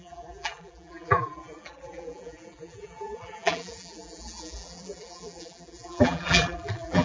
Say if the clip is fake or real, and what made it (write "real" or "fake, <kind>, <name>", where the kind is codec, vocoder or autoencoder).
fake, vocoder, BigVGAN v2